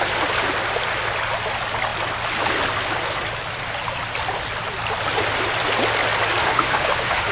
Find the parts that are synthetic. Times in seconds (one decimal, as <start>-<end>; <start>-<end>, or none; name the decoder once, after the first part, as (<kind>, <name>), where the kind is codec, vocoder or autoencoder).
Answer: 6.4-7.3 (autoencoder, DAC-VAE)